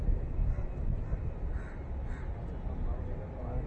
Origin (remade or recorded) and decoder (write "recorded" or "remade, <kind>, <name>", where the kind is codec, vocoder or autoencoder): recorded